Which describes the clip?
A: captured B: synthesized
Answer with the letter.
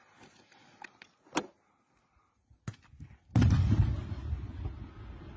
A